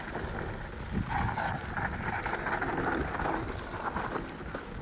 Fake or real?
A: real